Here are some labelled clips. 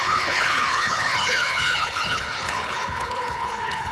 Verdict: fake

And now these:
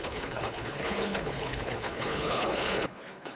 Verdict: fake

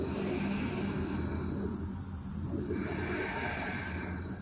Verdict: real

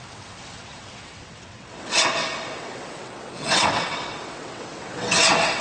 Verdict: fake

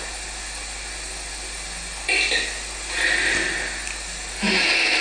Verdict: real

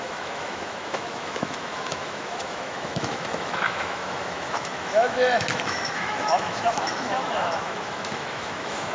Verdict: fake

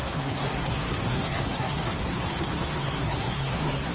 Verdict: fake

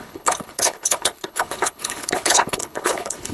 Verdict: fake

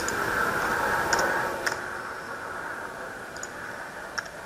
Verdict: real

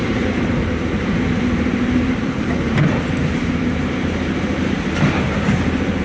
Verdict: fake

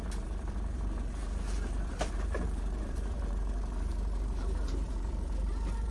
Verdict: fake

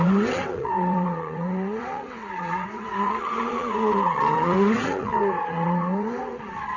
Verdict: fake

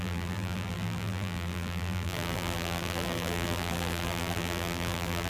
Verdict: fake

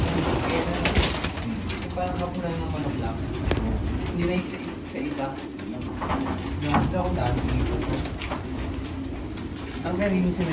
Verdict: real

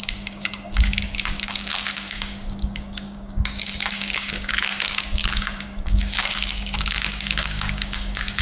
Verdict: fake